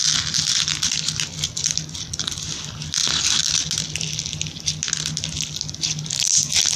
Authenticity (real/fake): real